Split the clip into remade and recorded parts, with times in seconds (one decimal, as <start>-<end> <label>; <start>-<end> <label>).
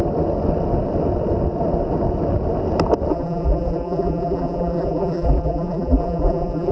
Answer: 0.0-3.1 recorded; 3.1-6.7 remade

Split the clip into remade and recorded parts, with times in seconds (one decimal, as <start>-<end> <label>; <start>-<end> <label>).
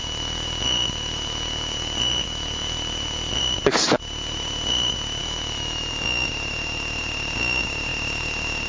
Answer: 0.0-3.4 remade; 3.4-5.2 recorded; 5.2-5.9 remade; 5.9-8.7 recorded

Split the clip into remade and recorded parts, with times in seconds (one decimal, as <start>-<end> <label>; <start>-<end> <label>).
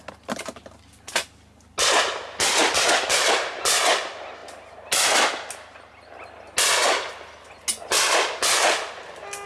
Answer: 0.0-9.5 recorded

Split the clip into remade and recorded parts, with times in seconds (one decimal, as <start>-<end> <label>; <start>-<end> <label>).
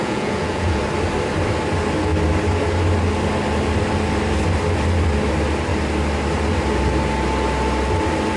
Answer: 0.0-0.8 remade; 0.8-8.4 recorded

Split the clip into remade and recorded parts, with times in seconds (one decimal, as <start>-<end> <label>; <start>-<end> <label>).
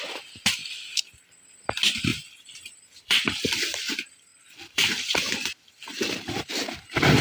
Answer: 0.0-0.6 recorded; 0.6-1.3 remade; 1.3-2.1 recorded; 2.1-3.6 remade; 3.6-4.3 recorded; 4.3-6.5 remade; 6.5-7.2 recorded